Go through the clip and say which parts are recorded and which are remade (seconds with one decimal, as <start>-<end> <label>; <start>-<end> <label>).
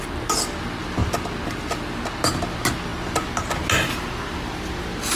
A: 0.0-5.2 recorded